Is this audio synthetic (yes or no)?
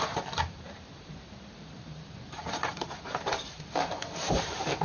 yes